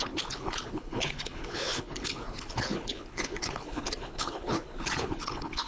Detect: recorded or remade remade